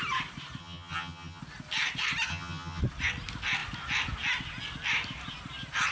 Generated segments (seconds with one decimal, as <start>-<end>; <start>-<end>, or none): 0.6-1.4; 2.3-2.8